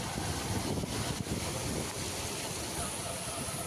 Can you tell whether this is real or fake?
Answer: real